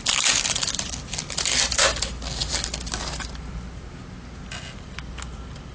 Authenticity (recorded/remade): recorded